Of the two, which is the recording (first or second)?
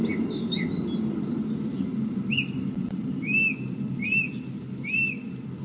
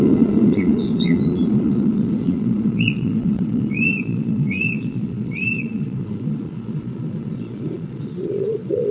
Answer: first